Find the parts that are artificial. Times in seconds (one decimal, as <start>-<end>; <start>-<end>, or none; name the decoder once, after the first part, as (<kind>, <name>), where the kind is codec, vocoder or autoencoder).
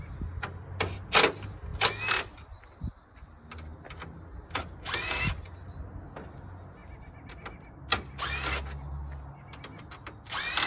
none